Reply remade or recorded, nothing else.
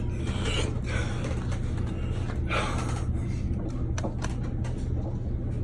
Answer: recorded